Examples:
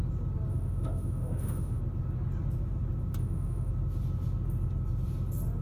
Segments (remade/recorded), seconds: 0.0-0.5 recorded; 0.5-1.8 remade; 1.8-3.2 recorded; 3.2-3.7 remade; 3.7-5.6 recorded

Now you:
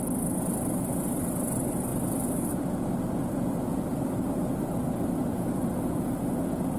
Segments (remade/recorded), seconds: 0.0-3.7 recorded; 3.7-4.3 remade; 4.3-4.8 recorded; 4.8-5.6 remade; 5.6-6.8 recorded

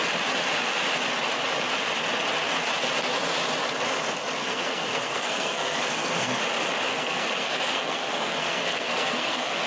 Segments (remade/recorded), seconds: 0.0-4.4 recorded; 4.4-6.4 remade; 6.4-6.9 recorded; 6.9-9.7 remade

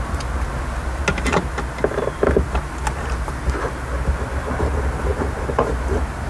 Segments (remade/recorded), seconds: 0.0-5.1 recorded; 5.1-6.3 remade

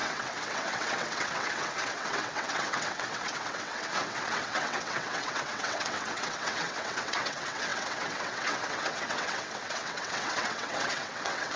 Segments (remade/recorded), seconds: 0.0-11.6 remade